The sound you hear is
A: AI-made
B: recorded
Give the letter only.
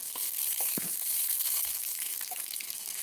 A